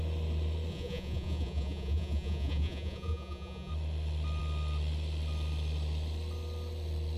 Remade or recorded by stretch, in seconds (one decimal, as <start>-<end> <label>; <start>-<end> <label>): 0.0-0.7 recorded; 0.7-3.7 remade; 3.7-7.2 recorded